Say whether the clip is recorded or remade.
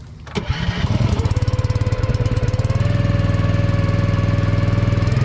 recorded